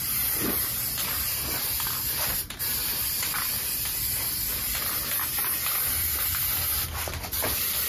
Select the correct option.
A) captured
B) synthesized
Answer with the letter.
B